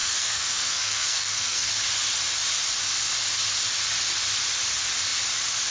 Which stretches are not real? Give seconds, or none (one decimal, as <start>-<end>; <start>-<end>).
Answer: 0.0-1.7

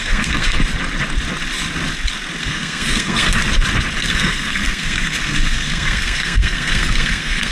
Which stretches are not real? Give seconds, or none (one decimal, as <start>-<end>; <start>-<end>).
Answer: 0.0-0.6; 2.4-3.4; 4.0-7.5

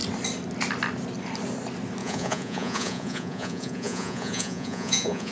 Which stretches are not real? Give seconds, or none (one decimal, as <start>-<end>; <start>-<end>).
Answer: 2.0-5.3

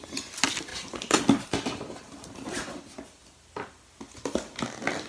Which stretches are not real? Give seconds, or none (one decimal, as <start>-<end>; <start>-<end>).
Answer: 0.7-2.8